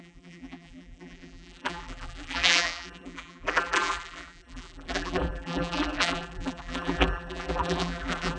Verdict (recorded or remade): remade